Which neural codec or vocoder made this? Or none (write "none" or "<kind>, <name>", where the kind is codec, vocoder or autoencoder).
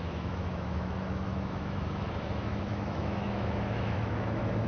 autoencoder, DAC-VAE